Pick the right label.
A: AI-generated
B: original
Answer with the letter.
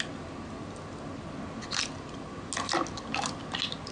B